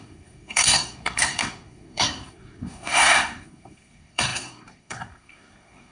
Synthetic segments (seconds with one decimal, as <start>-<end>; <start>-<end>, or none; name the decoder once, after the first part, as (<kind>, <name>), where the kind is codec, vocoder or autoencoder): 0.0-5.9 (codec, SNAC)